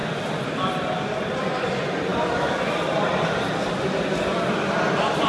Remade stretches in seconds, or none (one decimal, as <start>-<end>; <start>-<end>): none